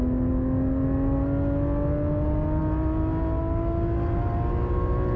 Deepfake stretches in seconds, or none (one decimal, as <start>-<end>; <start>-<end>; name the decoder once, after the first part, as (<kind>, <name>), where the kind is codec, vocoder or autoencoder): none